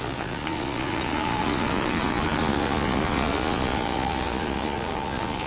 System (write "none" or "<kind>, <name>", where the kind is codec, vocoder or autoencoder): vocoder, Vocos